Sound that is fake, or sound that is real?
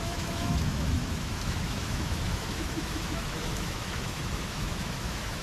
fake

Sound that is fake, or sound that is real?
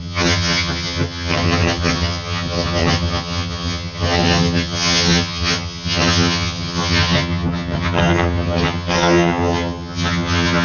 fake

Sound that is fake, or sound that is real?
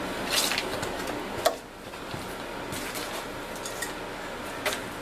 real